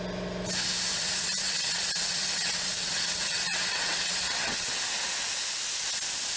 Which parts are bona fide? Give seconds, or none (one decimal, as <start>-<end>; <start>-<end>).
0.0-0.9; 4.7-6.4